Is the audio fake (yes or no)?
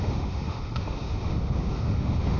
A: yes